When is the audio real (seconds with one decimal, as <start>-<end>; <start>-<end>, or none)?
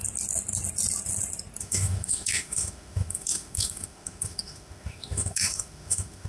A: 0.0-1.6